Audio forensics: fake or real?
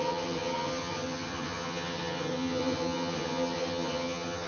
fake